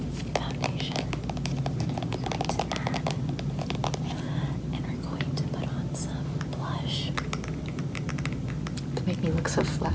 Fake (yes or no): no